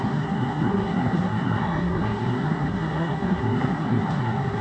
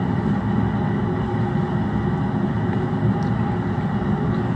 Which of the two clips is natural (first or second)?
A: second